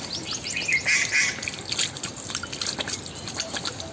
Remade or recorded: recorded